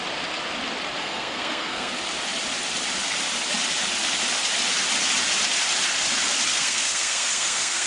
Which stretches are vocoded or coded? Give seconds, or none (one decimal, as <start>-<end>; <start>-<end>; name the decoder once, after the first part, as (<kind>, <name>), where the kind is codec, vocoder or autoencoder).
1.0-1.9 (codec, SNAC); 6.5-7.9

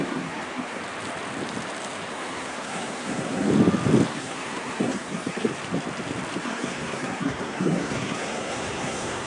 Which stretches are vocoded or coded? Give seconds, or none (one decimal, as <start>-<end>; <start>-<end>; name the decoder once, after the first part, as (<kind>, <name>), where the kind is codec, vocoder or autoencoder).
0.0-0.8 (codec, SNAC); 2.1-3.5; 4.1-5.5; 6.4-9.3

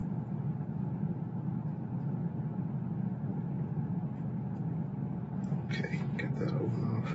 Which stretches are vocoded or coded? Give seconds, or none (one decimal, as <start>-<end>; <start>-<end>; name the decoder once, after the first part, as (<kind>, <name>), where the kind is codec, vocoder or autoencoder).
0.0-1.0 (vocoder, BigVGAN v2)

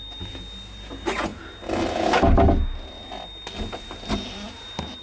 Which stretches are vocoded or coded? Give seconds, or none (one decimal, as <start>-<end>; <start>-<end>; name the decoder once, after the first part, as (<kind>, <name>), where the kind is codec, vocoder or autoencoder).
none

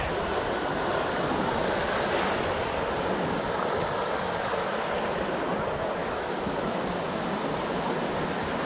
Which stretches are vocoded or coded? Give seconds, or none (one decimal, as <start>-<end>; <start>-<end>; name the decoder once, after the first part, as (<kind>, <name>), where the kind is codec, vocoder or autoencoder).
6.0-6.7 (autoencoder, DAC-VAE)

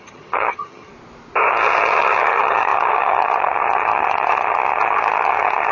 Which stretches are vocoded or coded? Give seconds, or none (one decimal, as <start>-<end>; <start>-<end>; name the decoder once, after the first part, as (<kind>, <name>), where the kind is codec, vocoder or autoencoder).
0.0-0.9 (vocoder, HiFi-GAN); 1.5-5.7

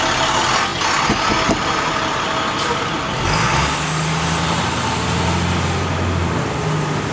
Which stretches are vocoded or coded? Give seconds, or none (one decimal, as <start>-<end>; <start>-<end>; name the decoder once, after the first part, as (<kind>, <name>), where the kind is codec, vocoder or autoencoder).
none